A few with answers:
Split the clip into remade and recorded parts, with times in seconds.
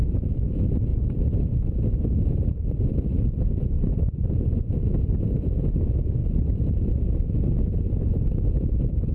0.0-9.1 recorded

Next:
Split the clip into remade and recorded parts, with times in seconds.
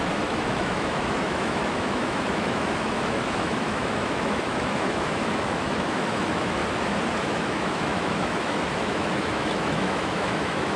0.0-6.6 remade; 6.6-7.2 recorded; 7.2-10.8 remade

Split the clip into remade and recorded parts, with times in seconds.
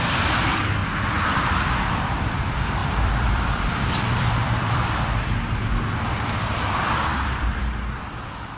0.0-2.8 recorded; 2.8-8.0 remade; 8.0-8.6 recorded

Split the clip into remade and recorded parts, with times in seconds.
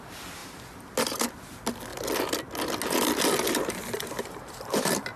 0.0-5.2 recorded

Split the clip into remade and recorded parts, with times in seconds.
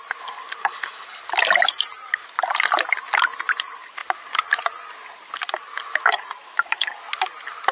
0.0-0.6 recorded; 0.6-1.2 remade; 1.2-7.7 recorded